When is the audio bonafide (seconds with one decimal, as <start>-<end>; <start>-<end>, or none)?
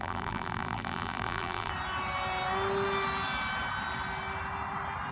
1.7-5.1